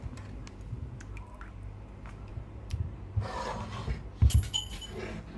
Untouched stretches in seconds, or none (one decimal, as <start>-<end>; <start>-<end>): 0.0-2.3; 3.6-5.4